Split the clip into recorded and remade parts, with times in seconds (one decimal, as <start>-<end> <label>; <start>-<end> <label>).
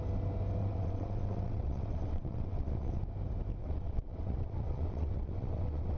0.0-0.6 recorded; 0.6-3.0 remade; 3.0-3.6 recorded; 3.6-6.0 remade